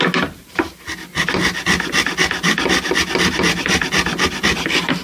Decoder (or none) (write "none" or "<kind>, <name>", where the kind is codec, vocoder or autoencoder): none